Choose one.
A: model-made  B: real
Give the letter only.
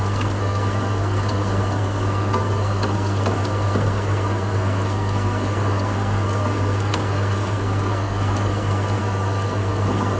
A